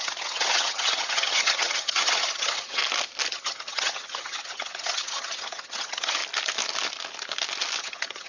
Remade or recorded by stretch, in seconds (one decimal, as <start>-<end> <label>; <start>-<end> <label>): 0.0-2.8 remade; 2.8-3.3 recorded; 3.3-6.2 remade; 6.2-7.8 recorded; 7.8-8.3 remade